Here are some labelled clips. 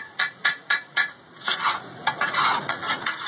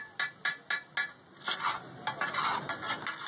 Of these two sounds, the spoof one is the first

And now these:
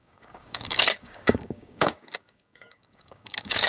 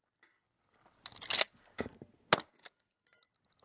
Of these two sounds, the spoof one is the first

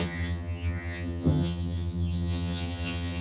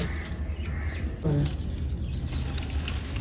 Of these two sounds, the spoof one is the first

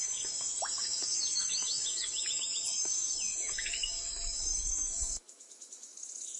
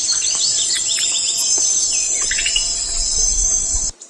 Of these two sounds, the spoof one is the first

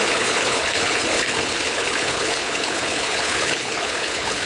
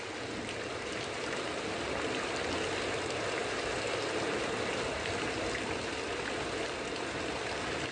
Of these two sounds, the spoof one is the first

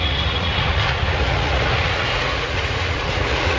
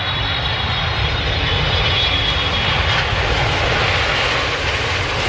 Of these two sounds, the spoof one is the first